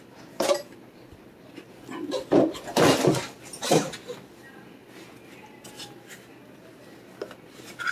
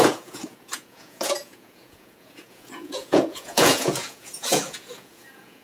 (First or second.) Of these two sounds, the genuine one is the first